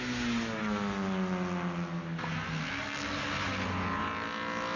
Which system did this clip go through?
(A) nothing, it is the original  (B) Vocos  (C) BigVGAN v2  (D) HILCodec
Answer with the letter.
A